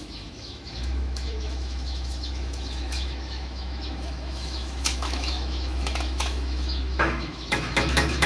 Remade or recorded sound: remade